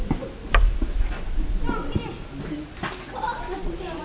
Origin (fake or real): real